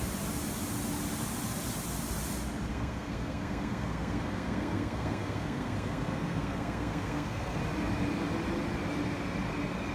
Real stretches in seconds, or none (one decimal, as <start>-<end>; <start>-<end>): 0.0-2.7; 7.6-9.9